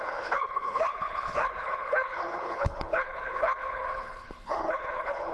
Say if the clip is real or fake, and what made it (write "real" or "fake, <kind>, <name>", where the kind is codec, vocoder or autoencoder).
fake, codec, HILCodec